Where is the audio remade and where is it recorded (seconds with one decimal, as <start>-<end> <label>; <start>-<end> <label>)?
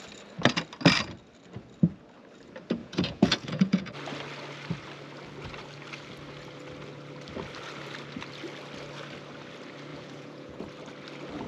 0.0-2.8 recorded; 2.8-3.9 remade; 3.9-9.9 recorded; 9.9-10.6 remade; 10.6-11.5 recorded